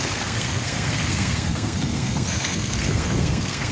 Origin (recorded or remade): remade